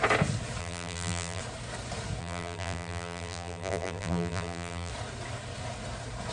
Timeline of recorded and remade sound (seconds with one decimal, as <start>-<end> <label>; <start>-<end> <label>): 0.0-0.6 recorded; 0.6-1.4 remade; 1.4-2.2 recorded; 2.2-4.9 remade; 4.9-6.3 recorded